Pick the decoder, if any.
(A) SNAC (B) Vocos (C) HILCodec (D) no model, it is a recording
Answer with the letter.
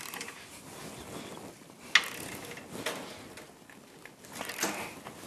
D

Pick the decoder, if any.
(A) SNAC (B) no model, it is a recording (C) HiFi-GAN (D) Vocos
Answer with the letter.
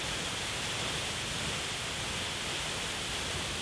B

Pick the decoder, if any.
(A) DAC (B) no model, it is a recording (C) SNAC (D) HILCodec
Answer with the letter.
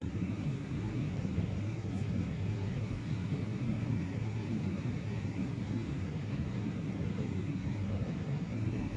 C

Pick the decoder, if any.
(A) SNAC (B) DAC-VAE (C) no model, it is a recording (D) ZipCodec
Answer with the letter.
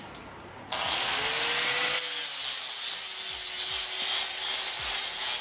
C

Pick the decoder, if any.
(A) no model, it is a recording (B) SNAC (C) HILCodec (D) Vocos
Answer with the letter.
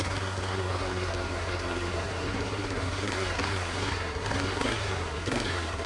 B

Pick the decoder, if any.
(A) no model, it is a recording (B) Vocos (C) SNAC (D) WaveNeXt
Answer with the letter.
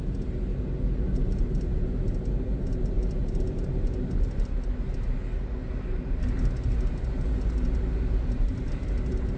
A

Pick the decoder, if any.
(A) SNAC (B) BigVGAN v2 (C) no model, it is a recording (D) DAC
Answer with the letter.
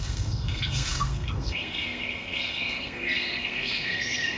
A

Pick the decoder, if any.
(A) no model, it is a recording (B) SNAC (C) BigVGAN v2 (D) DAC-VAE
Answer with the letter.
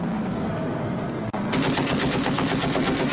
B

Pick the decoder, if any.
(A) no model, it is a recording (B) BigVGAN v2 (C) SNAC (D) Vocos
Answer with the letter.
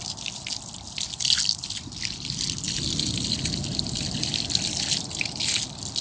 A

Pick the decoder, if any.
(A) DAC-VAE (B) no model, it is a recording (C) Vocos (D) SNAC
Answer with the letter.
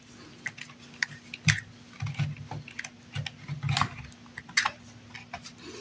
B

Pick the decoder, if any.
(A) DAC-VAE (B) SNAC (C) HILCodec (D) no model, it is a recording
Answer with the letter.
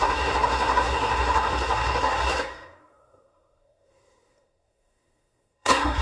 B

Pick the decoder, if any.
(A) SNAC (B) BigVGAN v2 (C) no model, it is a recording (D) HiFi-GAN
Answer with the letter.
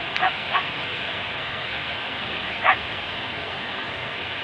A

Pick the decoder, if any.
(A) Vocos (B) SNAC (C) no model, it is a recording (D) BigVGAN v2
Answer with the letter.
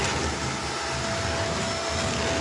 C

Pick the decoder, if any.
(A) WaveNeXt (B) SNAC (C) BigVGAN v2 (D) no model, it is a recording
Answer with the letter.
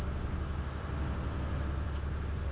D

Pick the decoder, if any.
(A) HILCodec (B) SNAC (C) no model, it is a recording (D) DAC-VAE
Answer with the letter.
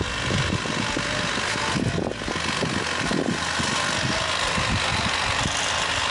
C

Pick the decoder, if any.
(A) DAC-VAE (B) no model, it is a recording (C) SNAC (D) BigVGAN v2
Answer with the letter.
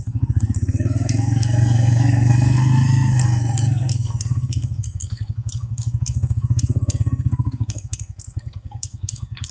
C